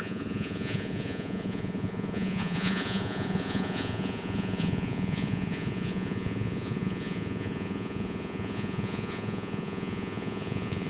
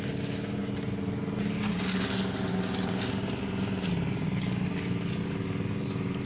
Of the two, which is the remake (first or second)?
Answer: first